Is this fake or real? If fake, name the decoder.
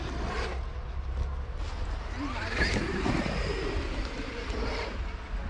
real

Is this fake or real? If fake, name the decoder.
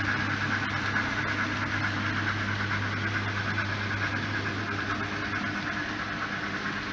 real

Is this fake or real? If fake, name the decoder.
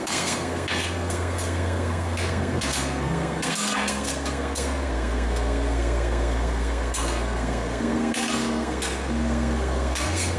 fake, codec, SNAC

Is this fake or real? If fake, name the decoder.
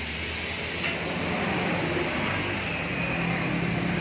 real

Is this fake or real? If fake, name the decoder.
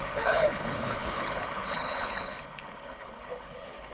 fake, codec, HILCodec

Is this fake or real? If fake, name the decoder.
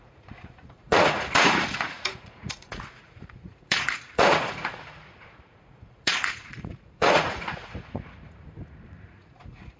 fake, vocoder, Vocos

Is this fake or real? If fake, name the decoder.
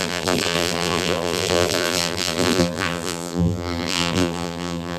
fake, vocoder, BigVGAN v2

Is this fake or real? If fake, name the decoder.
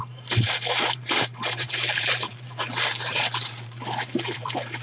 fake, vocoder, BigVGAN v2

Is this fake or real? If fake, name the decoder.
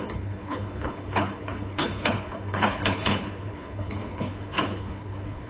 fake, codec, HILCodec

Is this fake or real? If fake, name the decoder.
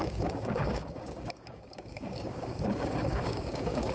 fake, codec, DAC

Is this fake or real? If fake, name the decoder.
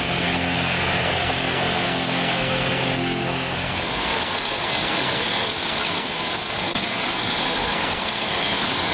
fake, codec, SNAC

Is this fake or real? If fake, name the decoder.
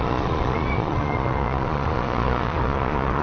fake, vocoder, Vocos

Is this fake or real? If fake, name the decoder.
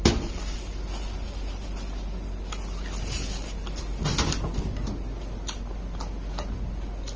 real